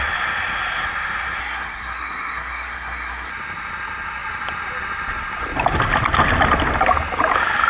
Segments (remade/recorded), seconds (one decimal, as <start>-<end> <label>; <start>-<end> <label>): 0.0-1.4 recorded; 1.4-3.3 remade; 3.3-7.7 recorded